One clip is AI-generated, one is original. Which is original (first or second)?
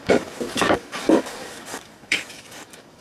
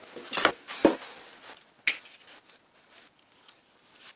second